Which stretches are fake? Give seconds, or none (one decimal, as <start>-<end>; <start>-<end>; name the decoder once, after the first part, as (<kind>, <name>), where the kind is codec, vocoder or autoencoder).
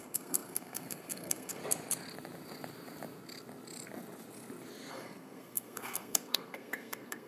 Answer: 0.0-1.6 (codec, SNAC); 4.9-7.3